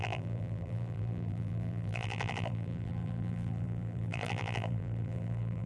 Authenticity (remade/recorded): remade